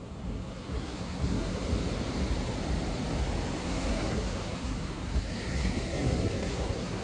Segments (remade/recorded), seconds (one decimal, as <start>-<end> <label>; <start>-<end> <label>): 0.0-1.6 remade; 1.6-3.6 recorded; 3.6-7.0 remade